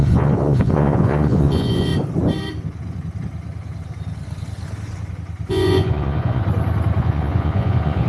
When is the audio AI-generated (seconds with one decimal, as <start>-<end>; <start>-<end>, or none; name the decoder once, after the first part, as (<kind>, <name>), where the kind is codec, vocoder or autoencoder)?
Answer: 0.0-1.9 (vocoder, Vocos); 5.5-6.4; 7.0-8.1